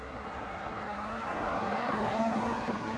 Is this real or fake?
fake